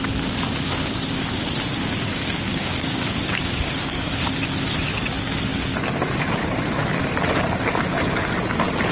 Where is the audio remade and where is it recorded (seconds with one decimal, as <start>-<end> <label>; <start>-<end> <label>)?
0.0-2.1 recorded; 2.1-4.2 remade; 4.2-8.9 recorded